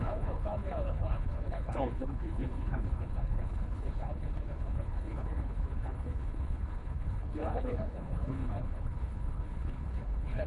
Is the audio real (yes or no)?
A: no